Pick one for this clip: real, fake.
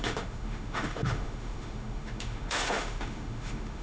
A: fake